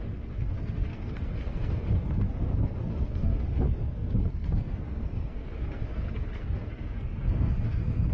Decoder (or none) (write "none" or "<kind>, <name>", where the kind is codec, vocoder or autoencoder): codec, SNAC